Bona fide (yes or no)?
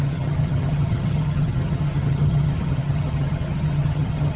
no